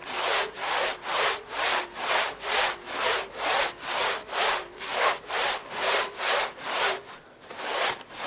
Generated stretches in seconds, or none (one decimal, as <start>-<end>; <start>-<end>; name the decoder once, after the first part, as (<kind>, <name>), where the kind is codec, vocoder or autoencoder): 0.4-2.5 (vocoder, BigVGAN v2); 4.2-5.1; 5.6-6.2